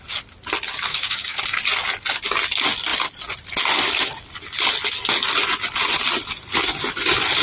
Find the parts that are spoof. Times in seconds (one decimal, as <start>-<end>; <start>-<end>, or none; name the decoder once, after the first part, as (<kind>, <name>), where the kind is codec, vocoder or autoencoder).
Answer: 0.9-1.4 (codec, DAC)